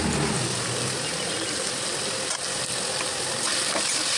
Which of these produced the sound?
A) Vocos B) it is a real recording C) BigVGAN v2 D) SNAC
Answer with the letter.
B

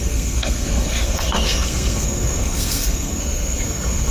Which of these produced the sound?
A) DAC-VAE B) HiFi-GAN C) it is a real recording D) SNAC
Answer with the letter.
D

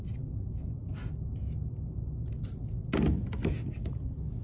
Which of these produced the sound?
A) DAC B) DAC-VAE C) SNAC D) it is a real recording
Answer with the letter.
D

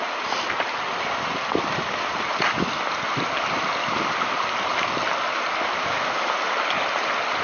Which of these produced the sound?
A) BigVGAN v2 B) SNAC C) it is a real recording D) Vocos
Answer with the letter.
C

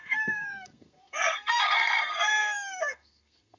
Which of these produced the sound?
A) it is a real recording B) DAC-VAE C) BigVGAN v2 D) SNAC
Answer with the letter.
D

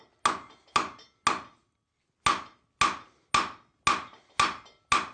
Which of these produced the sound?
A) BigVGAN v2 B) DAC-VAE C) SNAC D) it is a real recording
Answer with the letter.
D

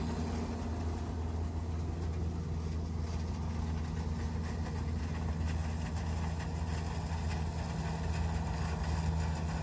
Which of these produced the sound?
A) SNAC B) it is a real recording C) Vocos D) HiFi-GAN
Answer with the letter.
B